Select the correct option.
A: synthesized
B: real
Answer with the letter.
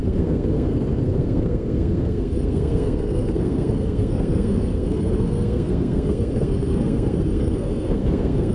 A